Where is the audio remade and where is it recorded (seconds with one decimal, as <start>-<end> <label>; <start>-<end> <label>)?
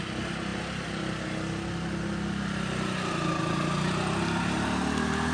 0.0-5.3 recorded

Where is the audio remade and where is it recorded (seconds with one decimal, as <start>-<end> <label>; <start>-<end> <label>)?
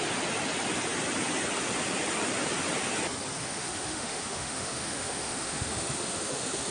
0.0-3.4 recorded; 3.4-6.7 remade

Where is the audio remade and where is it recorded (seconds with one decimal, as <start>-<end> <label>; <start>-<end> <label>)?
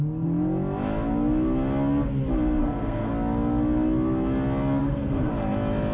0.0-2.6 recorded; 2.6-3.1 remade; 3.1-4.8 recorded; 4.8-5.3 remade; 5.3-5.9 recorded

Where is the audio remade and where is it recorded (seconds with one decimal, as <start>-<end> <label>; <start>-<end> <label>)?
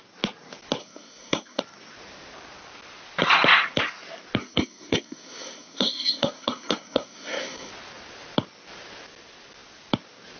0.0-0.8 recorded; 0.8-1.6 remade; 1.6-4.4 recorded; 4.4-7.7 remade; 7.7-10.4 recorded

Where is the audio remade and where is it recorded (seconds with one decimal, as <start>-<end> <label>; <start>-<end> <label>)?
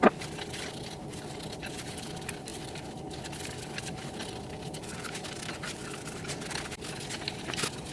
0.0-7.9 recorded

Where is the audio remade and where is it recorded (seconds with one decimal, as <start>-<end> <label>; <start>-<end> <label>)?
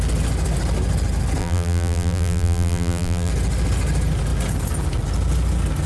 0.0-1.4 recorded; 1.4-3.3 remade; 3.3-5.9 recorded